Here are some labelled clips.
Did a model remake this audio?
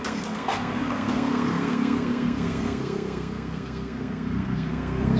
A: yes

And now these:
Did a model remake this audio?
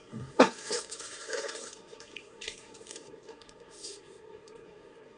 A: yes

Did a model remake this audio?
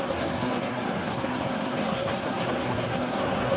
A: yes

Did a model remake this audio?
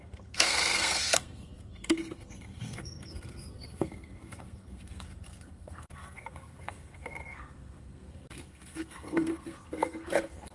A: yes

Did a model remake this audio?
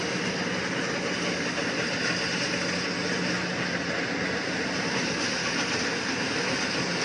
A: no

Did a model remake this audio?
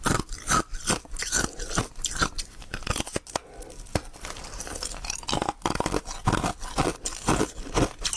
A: no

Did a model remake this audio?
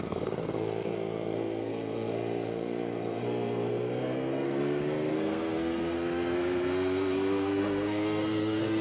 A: yes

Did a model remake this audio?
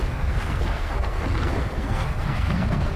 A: yes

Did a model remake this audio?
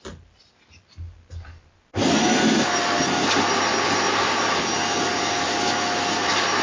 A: no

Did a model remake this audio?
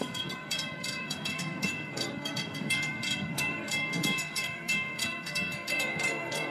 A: yes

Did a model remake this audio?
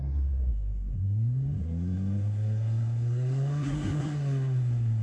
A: yes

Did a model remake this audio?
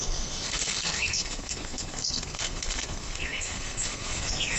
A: yes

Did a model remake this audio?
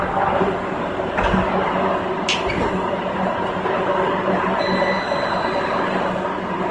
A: no